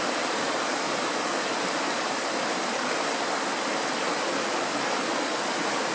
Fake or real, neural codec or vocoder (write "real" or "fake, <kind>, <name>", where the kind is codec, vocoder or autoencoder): real